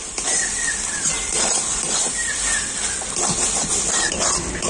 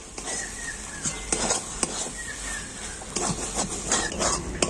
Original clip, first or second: second